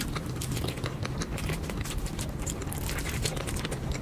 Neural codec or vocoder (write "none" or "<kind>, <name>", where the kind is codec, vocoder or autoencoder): none